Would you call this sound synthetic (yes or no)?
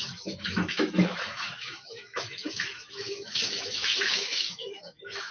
yes